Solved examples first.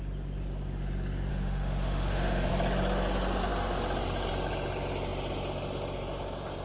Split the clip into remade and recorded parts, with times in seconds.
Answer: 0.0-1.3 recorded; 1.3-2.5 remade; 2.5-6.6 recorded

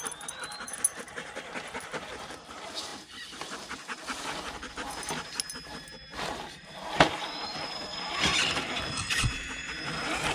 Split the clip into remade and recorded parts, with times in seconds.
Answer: 0.0-10.3 recorded

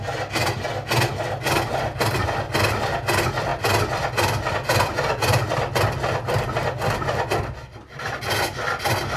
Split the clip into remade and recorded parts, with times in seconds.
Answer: 0.0-9.2 recorded

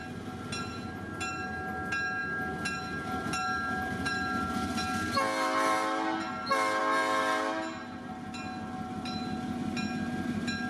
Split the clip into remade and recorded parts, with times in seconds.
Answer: 0.0-10.7 recorded

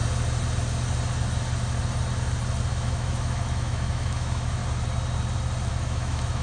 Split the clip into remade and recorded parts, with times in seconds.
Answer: 0.0-2.7 recorded; 2.7-4.6 remade; 4.6-5.7 recorded; 5.7-6.4 remade